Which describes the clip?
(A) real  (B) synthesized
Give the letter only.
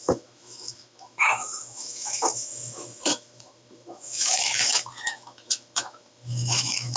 B